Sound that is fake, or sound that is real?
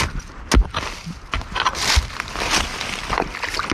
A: real